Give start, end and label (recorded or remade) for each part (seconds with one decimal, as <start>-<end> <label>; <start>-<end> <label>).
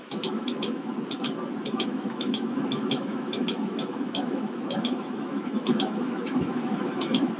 0.0-0.9 remade; 0.9-1.7 recorded; 1.7-7.4 remade